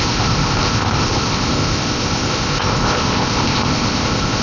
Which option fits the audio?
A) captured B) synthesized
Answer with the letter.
B